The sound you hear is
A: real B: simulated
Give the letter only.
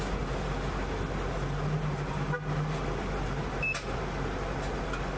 A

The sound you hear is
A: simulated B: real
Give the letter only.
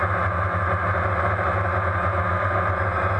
B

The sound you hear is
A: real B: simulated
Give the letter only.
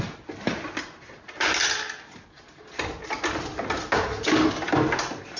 A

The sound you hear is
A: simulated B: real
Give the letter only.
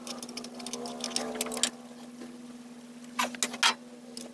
B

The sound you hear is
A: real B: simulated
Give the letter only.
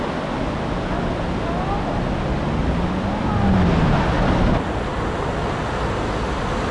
A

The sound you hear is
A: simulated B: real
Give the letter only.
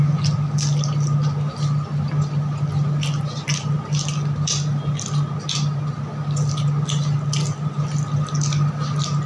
B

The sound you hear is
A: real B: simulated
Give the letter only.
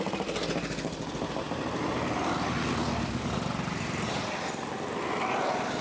A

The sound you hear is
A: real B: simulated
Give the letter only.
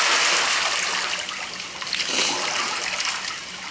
A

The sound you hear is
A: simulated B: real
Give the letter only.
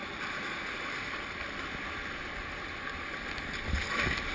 B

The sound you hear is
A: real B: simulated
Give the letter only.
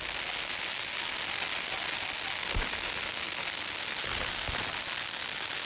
A